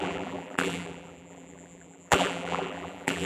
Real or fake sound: fake